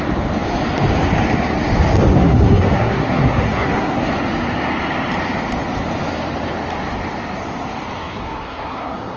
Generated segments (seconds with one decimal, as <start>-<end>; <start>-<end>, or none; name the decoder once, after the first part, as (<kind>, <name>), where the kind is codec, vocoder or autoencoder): 2.2-4.0 (codec, SNAC); 8.0-9.2

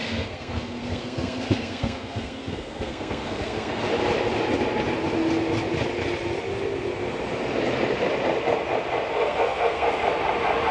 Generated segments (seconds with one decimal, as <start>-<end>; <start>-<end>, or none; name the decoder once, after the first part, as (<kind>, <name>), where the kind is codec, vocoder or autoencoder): 0.0-3.8 (codec, SNAC); 9.1-9.9

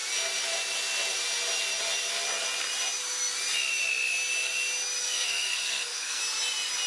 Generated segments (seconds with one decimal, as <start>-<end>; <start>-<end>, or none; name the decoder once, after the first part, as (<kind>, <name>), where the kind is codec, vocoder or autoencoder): 5.0-6.2 (codec, SNAC)